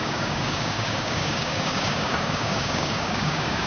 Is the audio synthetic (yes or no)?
yes